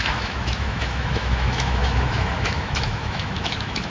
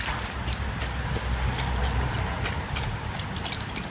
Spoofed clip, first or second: first